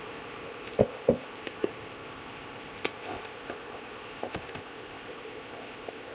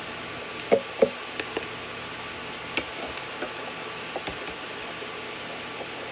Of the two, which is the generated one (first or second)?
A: first